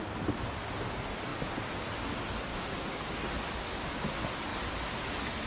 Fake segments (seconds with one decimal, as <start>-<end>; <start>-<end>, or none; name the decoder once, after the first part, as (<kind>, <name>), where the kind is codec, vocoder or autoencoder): 2.5-3.2 (codec, DAC)